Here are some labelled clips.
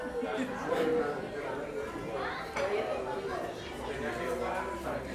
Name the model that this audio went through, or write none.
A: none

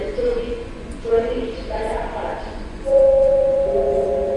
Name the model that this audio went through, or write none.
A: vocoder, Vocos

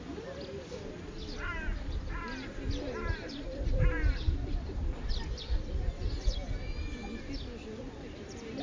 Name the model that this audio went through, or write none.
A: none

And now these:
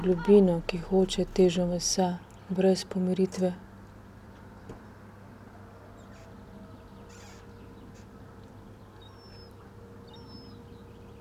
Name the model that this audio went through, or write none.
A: none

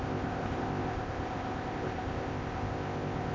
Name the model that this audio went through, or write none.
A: codec, ZipCodec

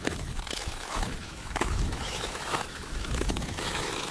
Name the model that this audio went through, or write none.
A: autoencoder, DAC-VAE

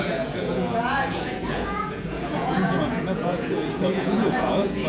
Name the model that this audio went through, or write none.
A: vocoder, Vocos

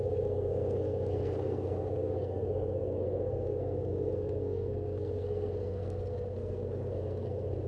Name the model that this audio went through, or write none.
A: codec, SNAC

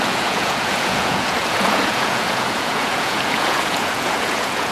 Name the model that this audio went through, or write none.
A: vocoder, Vocos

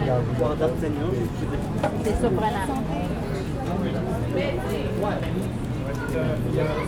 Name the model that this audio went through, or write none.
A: none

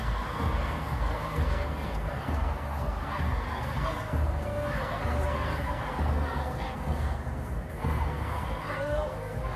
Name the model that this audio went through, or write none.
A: codec, SNAC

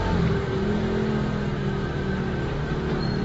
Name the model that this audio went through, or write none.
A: none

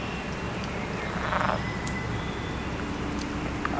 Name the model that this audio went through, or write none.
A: none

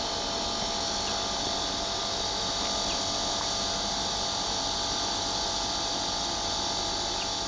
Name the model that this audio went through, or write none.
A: none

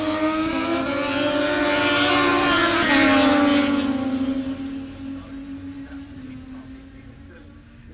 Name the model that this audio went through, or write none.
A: none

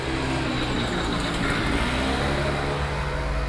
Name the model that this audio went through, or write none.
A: none